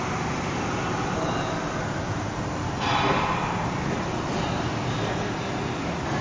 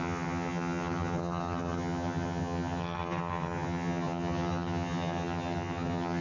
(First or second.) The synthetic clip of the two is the second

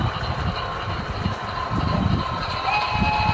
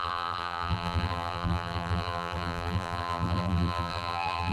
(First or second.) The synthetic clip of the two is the second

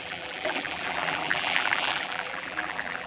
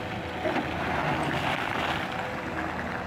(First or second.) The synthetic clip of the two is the first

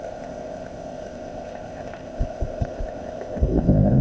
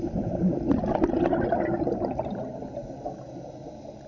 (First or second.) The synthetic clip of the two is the first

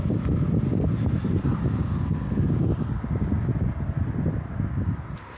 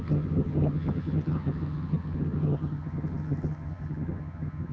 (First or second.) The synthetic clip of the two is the second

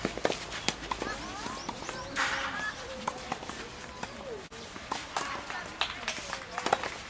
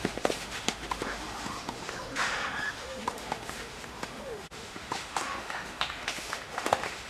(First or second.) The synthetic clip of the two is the second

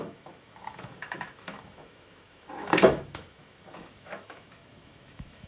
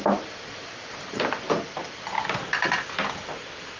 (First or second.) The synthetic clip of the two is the first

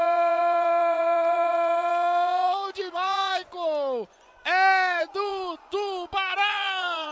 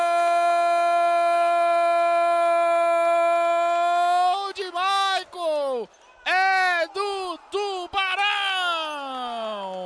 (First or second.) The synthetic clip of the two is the first